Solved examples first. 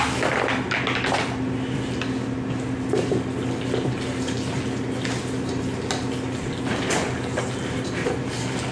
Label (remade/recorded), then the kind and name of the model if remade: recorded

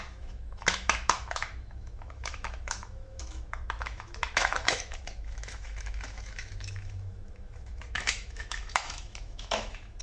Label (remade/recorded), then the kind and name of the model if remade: remade, autoencoder, DAC-VAE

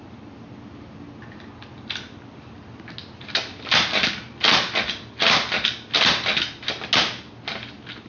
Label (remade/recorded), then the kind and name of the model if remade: recorded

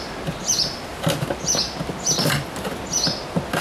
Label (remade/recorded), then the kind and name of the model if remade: recorded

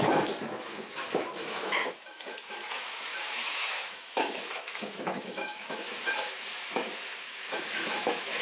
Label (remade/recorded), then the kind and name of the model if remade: remade, autoencoder, DAC-VAE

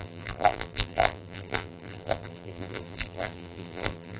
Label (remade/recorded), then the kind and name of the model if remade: remade, vocoder, BigVGAN v2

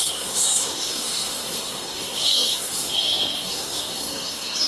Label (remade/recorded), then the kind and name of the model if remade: remade, codec, SNAC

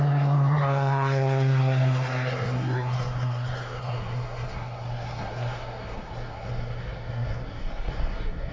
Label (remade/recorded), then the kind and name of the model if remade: remade, codec, SNAC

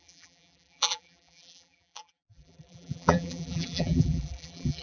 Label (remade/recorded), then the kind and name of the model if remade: remade, vocoder, BigVGAN v2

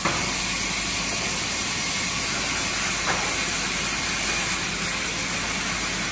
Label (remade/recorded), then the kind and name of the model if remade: recorded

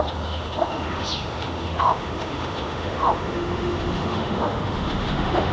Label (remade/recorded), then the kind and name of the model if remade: remade, autoencoder, DAC-VAE